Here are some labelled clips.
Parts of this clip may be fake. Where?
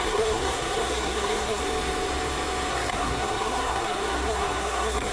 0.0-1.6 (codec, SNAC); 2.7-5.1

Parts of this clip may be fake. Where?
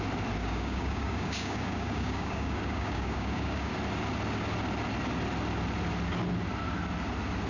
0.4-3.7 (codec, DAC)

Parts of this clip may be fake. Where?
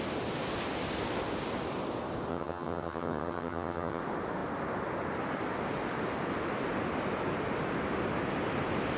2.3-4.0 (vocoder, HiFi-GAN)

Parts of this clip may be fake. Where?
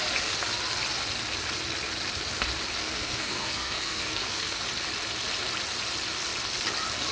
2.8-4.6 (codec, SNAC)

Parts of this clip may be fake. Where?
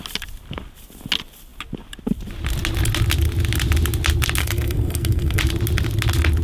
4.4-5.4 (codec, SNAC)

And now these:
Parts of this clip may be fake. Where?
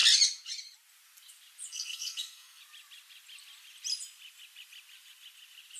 1.7-2.6 (codec, SNAC)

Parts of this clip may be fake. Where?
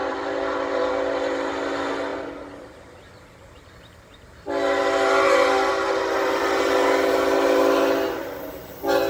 0.0-0.9 (vocoder, BigVGAN v2)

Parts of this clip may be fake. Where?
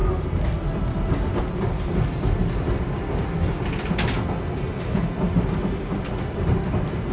none